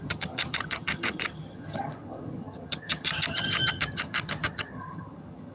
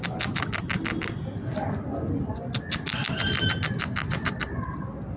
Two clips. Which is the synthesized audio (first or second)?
first